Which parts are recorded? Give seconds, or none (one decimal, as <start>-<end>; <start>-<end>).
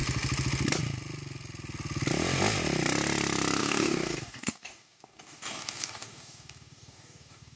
0.0-3.6